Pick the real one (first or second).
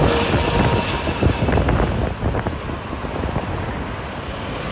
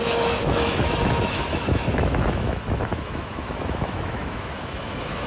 first